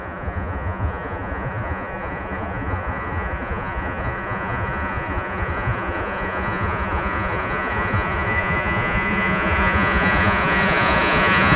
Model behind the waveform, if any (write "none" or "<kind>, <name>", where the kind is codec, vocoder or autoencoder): vocoder, Vocos